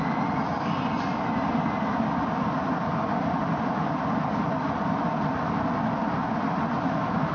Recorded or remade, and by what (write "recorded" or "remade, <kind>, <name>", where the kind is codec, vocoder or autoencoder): recorded